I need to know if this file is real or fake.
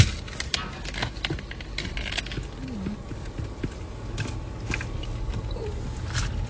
real